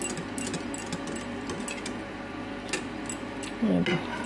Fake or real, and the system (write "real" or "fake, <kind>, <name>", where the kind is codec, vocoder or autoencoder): real